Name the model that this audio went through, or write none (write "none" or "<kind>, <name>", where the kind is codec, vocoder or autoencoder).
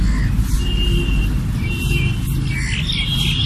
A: none